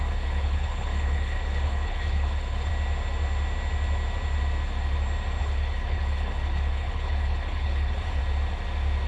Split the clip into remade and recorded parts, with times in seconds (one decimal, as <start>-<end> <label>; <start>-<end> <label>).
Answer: 0.0-2.7 remade; 2.7-5.4 recorded; 5.4-8.2 remade; 8.2-9.1 recorded